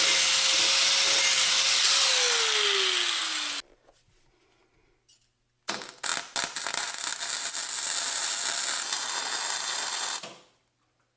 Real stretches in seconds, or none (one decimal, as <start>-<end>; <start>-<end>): 0.0-11.2